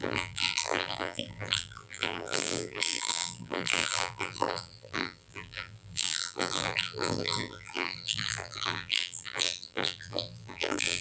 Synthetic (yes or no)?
yes